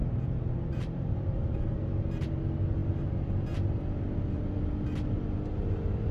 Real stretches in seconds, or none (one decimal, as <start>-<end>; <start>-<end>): 2.3-6.1